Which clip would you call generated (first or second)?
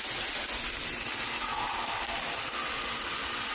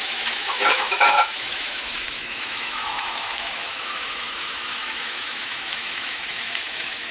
second